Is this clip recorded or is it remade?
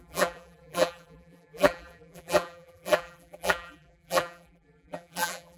remade